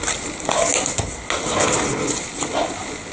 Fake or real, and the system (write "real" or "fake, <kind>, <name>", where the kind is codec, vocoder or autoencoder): real